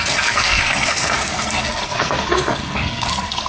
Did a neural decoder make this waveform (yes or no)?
yes